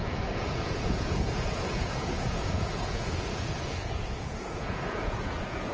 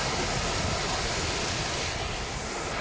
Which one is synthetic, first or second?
first